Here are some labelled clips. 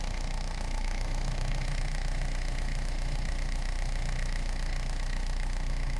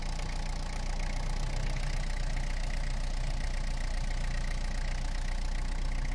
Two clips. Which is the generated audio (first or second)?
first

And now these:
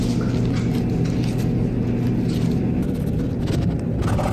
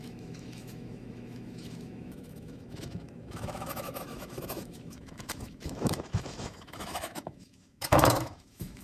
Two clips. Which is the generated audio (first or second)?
second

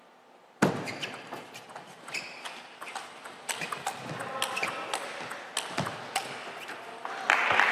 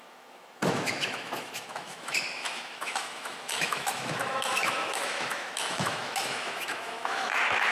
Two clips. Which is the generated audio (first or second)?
second